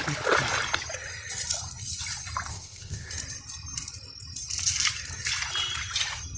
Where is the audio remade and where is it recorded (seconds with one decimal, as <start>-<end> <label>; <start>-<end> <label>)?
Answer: 0.0-2.5 recorded; 2.5-3.1 remade; 3.1-6.4 recorded